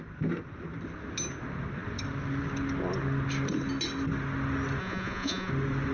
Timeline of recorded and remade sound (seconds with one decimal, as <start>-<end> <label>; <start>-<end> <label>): 0.0-4.8 recorded; 4.8-5.5 remade; 5.5-5.9 recorded